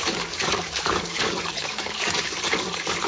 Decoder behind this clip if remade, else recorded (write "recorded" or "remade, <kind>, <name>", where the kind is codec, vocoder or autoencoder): remade, codec, DAC